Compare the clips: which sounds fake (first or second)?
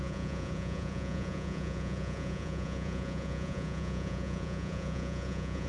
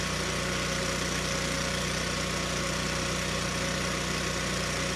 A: first